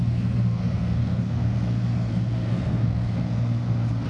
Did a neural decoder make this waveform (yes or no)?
yes